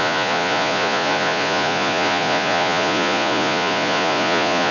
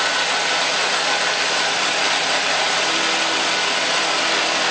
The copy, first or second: first